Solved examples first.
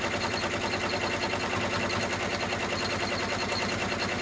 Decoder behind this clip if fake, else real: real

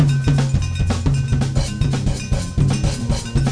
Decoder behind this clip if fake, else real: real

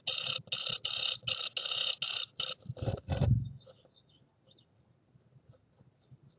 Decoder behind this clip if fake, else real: real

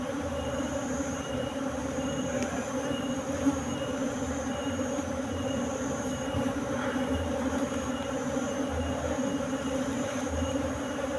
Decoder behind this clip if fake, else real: fake, vocoder, BigVGAN v2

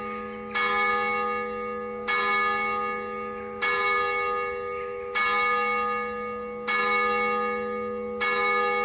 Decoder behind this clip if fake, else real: real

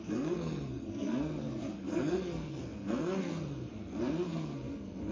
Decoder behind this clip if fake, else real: fake, codec, SNAC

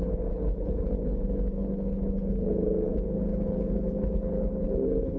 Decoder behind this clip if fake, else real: fake, codec, HILCodec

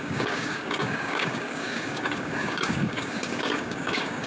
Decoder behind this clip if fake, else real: fake, codec, DAC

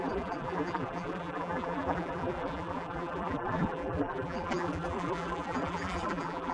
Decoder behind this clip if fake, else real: fake, vocoder, BigVGAN v2